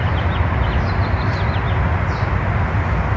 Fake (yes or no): no